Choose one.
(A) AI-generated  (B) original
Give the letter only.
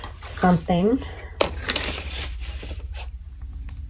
A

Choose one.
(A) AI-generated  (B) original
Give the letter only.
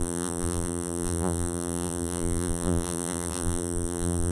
A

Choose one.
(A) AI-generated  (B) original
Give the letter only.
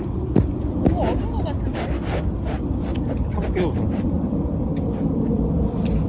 B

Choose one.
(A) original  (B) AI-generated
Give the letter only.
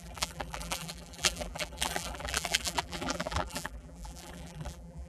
B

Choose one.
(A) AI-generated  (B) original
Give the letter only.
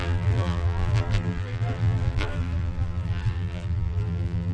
A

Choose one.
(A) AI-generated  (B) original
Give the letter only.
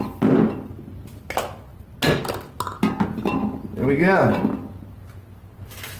B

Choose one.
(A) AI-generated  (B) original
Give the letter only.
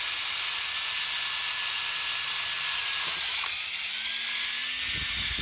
B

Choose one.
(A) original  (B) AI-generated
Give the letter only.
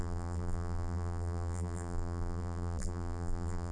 B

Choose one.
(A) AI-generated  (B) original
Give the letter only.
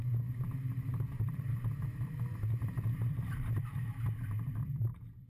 A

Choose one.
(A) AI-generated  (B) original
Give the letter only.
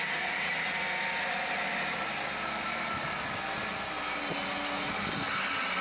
B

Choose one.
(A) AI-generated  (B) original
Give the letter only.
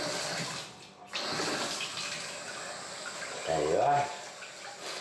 B